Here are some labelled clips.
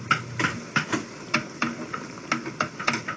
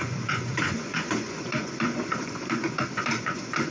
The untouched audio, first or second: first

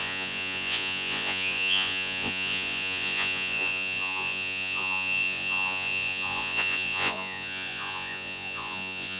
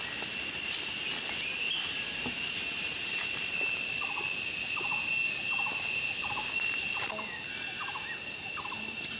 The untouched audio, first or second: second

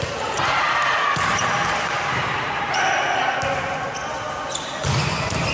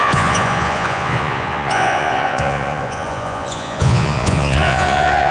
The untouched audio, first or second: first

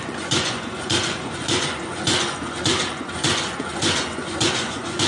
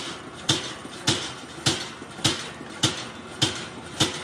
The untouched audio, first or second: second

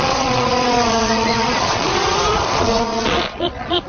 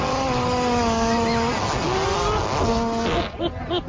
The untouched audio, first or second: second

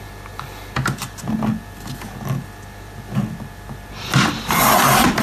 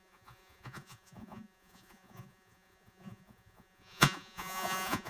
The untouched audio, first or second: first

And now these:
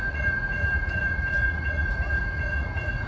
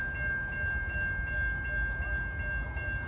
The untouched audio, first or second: second